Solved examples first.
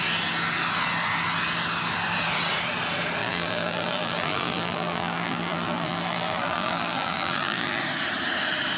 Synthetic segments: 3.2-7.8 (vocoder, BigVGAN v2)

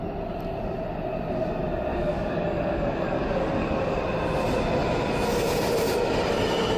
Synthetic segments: 1.9-4.0 (codec, DAC)

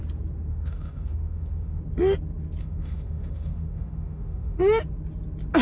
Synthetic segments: 0.5-1.8 (autoencoder, DAC-VAE); 2.6-4.6